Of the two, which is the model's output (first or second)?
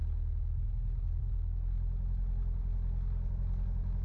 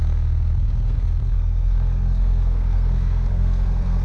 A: second